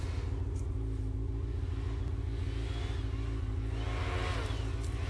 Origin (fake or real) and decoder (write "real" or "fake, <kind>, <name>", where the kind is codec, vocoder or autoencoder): real